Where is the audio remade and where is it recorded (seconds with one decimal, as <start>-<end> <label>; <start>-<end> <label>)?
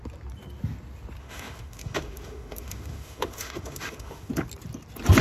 0.0-1.2 recorded; 1.2-4.3 remade; 4.3-5.2 recorded